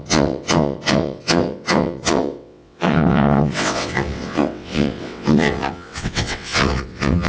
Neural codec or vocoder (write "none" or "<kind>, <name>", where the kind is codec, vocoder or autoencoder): vocoder, WaveNeXt